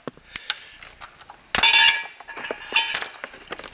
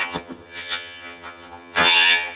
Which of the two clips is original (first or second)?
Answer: first